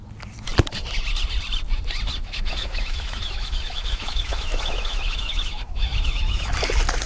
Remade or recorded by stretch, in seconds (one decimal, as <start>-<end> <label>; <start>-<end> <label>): 0.0-2.2 recorded; 2.2-6.5 remade; 6.5-7.1 recorded